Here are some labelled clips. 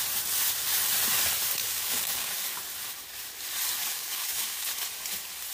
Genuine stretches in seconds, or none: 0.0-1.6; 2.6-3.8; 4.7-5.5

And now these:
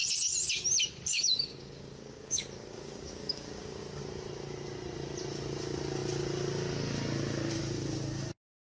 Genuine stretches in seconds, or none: 0.0-1.1; 4.0-8.6